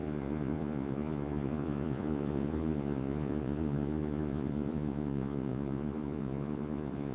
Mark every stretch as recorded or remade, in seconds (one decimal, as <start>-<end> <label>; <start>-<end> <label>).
0.0-7.1 remade